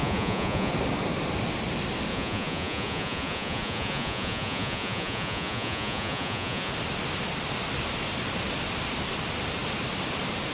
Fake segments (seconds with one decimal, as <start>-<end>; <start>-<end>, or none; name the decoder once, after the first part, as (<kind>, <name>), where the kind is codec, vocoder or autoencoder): 0.0-0.7 (vocoder, Vocos); 2.1-6.7